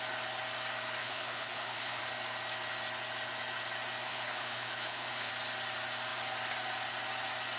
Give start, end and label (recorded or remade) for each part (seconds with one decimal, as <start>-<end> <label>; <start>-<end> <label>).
0.0-1.0 recorded; 1.0-2.0 remade; 2.0-4.1 recorded; 4.1-5.3 remade; 5.3-7.6 recorded